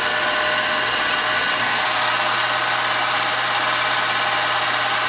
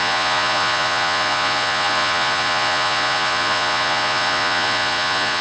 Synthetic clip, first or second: second